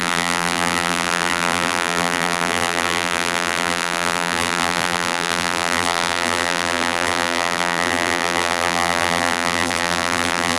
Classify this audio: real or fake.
fake